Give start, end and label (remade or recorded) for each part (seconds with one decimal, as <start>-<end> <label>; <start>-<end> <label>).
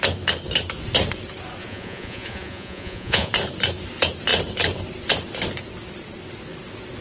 0.0-1.6 recorded; 1.6-3.3 remade; 3.3-7.0 recorded